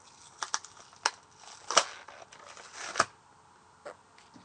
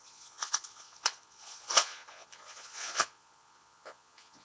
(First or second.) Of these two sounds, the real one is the first